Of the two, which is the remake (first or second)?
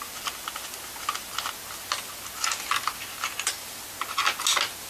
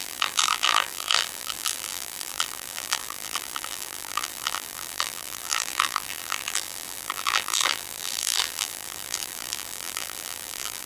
second